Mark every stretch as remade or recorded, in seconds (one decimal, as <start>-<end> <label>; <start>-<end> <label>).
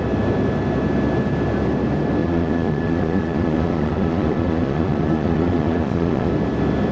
0.0-2.2 recorded; 2.2-6.3 remade; 6.3-6.9 recorded